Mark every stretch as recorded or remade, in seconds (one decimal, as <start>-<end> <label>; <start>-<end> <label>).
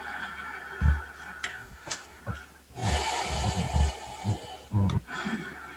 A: 0.0-1.5 recorded; 1.5-2.2 remade; 2.2-5.8 recorded